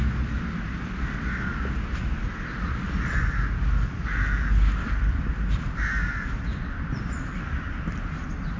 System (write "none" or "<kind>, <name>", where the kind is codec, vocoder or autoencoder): none